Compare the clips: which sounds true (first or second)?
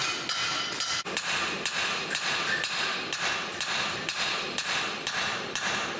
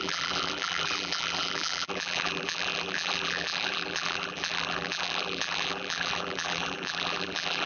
first